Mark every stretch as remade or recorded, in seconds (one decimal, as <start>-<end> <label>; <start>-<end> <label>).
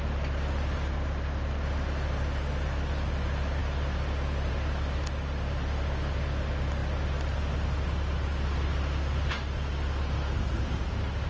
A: 0.0-11.3 recorded